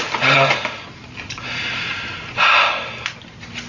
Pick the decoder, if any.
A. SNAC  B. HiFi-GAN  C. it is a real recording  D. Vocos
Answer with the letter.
C